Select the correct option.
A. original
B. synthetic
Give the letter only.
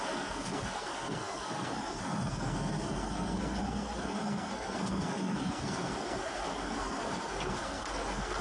B